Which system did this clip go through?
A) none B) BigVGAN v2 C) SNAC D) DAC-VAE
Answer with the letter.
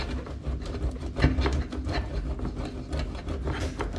A